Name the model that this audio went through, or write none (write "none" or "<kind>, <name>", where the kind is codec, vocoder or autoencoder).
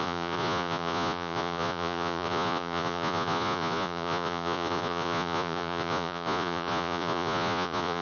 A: vocoder, Vocos